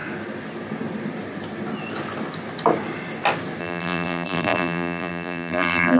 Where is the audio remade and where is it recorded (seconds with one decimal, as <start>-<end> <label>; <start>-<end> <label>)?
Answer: 0.0-3.6 recorded; 3.6-6.0 remade